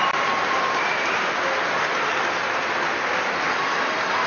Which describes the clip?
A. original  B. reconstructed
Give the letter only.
A